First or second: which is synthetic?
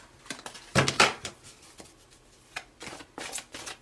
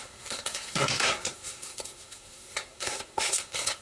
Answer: second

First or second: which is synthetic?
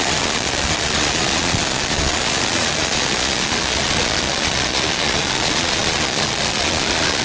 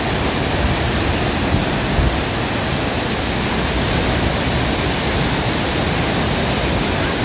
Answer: first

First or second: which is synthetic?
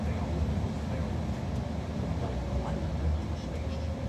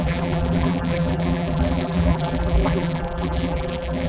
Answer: second